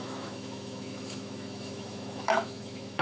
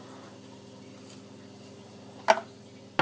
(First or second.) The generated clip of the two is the first